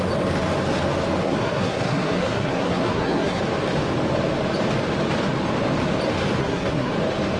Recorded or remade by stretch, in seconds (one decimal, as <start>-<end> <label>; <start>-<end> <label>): 0.0-1.2 recorded; 1.2-3.4 remade; 3.4-6.4 recorded; 6.4-6.9 remade; 6.9-7.4 recorded